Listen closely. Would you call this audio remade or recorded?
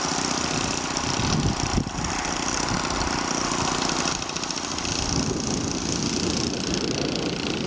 recorded